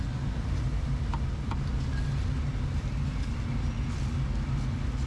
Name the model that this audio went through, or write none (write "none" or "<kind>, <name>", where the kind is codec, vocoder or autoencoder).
none